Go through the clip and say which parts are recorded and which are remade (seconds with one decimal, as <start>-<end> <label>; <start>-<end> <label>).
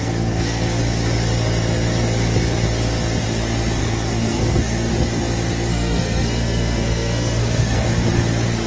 0.0-0.8 remade; 0.8-3.8 recorded; 3.8-4.9 remade; 4.9-5.7 recorded; 5.7-7.9 remade; 7.9-8.7 recorded